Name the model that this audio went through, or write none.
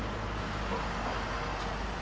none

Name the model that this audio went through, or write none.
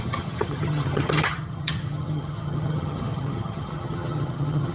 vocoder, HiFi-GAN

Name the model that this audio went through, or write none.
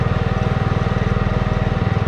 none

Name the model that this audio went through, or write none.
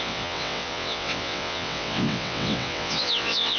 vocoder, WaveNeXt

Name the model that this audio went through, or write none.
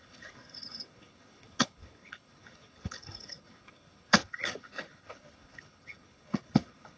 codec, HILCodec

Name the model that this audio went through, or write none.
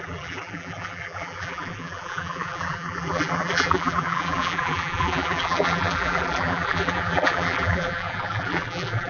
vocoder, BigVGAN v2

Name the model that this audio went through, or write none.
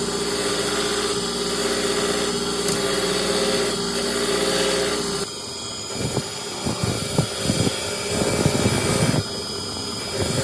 none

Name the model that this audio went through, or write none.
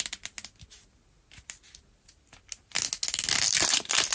none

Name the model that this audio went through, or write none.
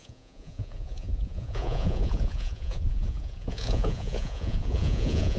vocoder, Vocos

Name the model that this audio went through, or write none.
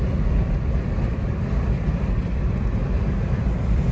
vocoder, BigVGAN v2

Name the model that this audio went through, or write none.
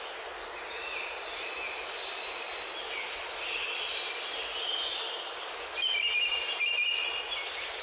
none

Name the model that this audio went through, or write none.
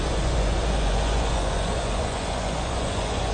vocoder, Vocos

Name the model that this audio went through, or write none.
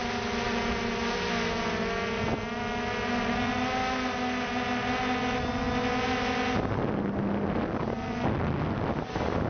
none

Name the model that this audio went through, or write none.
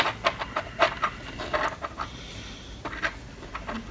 none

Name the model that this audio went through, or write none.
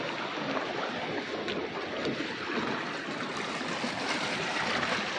none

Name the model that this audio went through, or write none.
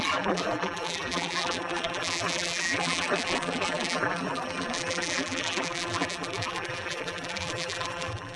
vocoder, BigVGAN v2